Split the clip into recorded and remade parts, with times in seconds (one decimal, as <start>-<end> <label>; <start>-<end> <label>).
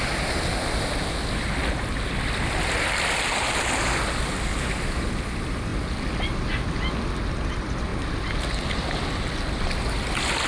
0.0-10.5 recorded